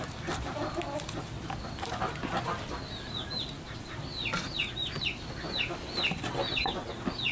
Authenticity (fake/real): real